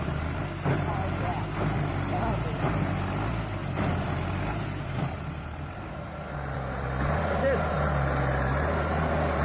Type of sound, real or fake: real